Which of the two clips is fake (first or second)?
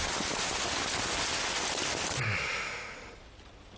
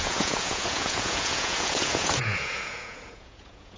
second